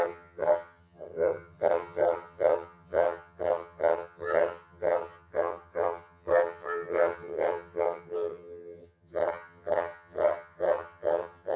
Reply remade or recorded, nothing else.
remade